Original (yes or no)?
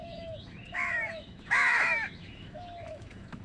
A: no